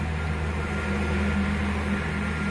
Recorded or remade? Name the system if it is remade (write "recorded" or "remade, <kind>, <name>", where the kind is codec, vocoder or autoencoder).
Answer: recorded